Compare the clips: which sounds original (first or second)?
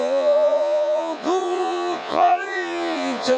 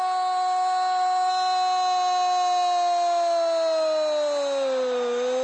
second